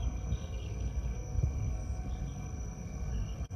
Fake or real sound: fake